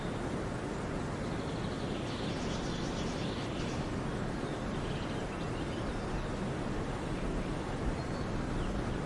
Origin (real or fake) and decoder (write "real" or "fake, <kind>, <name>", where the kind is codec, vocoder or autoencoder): real